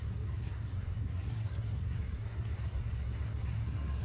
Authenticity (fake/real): fake